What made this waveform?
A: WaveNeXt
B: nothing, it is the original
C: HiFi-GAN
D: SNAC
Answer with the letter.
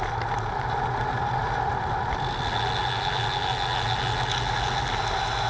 B